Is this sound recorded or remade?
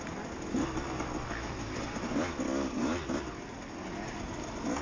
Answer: recorded